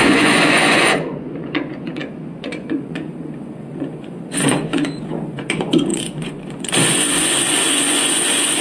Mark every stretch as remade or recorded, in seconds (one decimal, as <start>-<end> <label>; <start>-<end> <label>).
0.0-8.6 remade